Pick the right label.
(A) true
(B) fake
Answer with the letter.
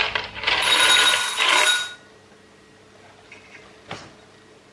A